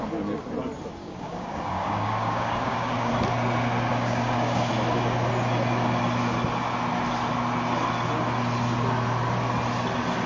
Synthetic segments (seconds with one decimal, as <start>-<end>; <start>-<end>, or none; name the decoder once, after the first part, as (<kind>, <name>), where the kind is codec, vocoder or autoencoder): 1.0-3.1 (codec, DAC); 3.9-4.7